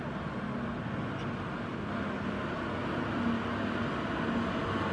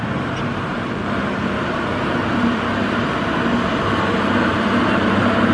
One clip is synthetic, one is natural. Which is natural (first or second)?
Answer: first